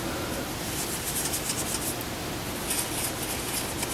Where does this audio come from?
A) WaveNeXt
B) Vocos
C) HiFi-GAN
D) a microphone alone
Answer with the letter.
D